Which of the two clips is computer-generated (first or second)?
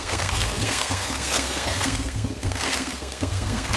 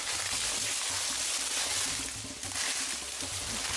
first